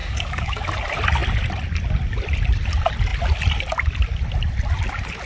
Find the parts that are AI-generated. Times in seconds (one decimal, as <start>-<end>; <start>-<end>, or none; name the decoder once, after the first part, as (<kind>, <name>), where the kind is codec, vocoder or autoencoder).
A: 0.0-0.7 (codec, DAC)